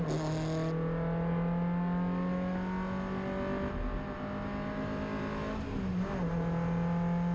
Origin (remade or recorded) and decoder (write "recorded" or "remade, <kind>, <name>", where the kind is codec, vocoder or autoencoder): recorded